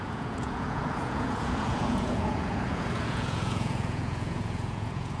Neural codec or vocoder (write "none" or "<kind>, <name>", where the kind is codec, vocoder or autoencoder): vocoder, Vocos